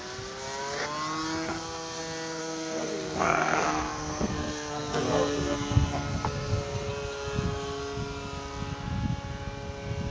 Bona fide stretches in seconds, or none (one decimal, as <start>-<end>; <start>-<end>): 0.0-1.5; 2.0-2.4; 6.9-10.1